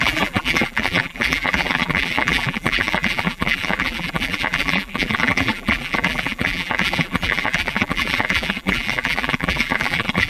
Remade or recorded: remade